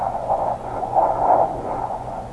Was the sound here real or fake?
fake